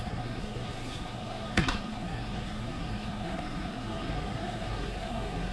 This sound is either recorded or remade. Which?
remade